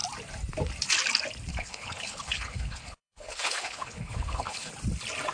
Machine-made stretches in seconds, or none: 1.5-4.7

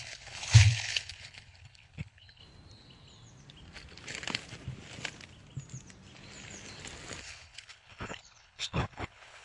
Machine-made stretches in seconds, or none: 0.0-2.4; 7.2-9.4